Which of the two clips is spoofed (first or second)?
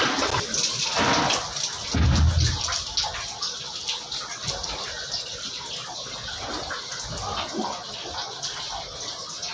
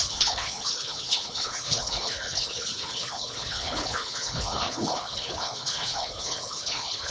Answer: second